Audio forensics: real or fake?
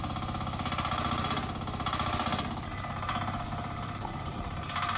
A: real